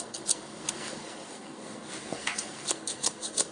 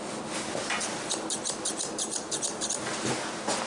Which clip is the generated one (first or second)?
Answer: first